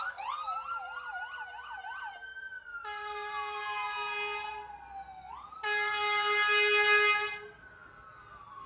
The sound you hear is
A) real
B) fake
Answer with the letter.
A